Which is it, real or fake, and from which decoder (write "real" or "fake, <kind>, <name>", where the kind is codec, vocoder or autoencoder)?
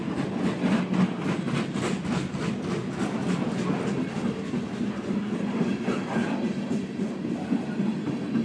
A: real